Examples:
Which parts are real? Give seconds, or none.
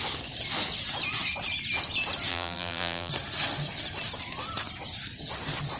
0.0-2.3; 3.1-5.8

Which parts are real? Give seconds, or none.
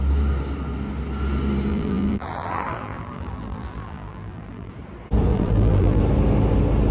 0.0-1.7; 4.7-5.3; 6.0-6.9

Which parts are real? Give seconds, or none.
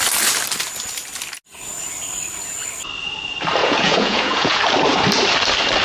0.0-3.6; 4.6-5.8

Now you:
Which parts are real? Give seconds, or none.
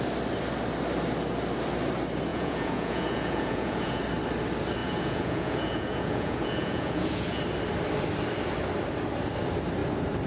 0.0-2.3; 4.0-4.8; 7.4-10.3